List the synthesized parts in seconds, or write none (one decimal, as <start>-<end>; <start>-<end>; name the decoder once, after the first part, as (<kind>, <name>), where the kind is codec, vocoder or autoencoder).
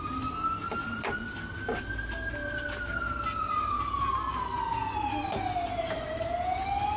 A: none